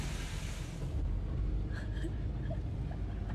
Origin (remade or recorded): recorded